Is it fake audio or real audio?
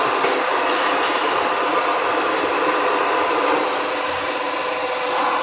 fake